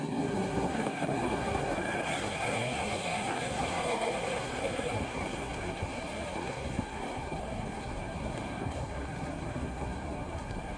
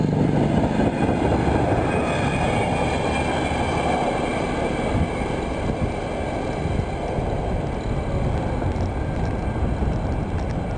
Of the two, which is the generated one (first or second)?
first